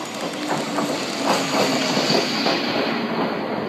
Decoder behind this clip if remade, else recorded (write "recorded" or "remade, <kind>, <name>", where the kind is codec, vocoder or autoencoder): recorded